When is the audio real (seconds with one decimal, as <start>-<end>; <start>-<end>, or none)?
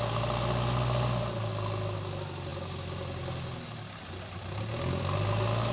0.0-5.7